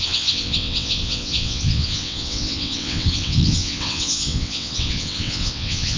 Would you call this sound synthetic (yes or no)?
yes